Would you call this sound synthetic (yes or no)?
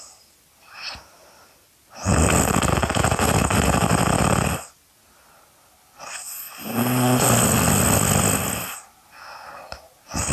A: no